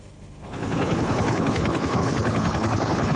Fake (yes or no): yes